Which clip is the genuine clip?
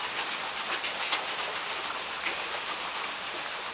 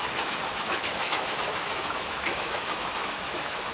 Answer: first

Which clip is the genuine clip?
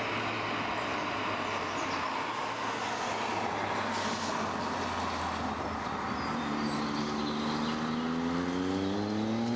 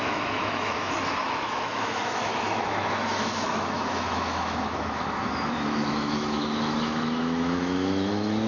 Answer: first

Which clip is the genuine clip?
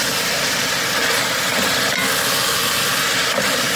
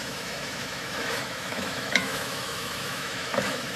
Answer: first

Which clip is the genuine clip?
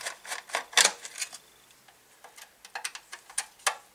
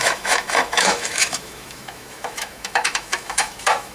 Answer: first